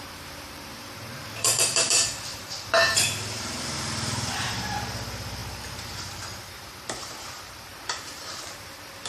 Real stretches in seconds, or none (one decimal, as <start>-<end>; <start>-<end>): none

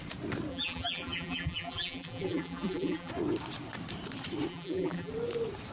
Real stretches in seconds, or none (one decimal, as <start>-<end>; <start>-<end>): 0.0-0.5; 3.1-4.5; 5.1-5.7

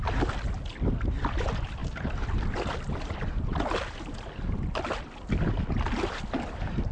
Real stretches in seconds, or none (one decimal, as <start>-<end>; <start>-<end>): 0.0-6.9